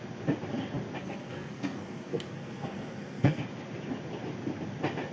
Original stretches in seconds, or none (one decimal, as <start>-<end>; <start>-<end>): 0.0-1.0; 3.4-5.1